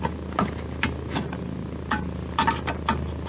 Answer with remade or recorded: recorded